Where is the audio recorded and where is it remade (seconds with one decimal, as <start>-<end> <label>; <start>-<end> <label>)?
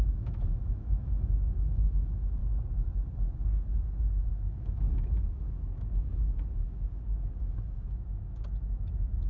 0.0-2.4 remade; 2.4-4.3 recorded; 4.3-9.3 remade